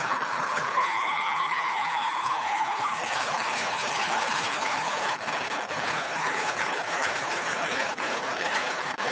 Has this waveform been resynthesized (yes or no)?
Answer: yes